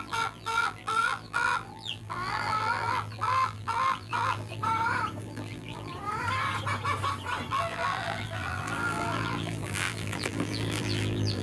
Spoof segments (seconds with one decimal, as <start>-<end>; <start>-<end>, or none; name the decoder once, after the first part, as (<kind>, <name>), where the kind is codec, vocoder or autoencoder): 0.0-4.6 (vocoder, BigVGAN v2); 5.2-5.9; 7.5-11.4